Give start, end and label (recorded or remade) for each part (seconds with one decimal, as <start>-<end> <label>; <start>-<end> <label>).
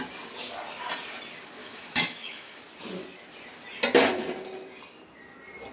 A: 0.0-1.6 recorded; 1.6-2.6 remade; 2.6-5.7 recorded